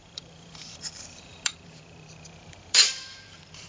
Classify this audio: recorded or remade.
remade